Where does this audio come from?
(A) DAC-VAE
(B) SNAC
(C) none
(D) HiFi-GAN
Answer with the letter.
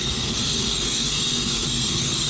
B